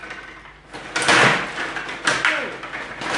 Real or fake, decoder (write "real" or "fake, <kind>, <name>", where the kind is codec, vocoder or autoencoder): real